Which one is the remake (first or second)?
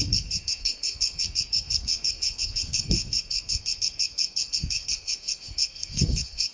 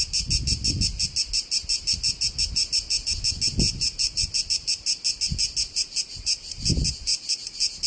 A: first